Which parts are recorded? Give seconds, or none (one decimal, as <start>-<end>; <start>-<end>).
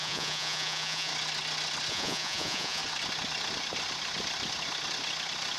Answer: 1.1-1.9; 2.8-5.6